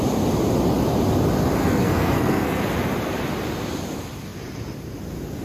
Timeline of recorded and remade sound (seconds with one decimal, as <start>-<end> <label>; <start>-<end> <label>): 0.0-1.6 recorded; 1.6-2.6 remade; 2.6-5.4 recorded